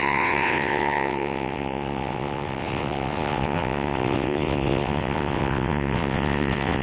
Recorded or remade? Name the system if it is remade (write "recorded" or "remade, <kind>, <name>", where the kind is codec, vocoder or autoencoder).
remade, vocoder, WaveNeXt